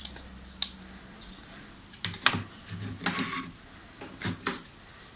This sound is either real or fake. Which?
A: real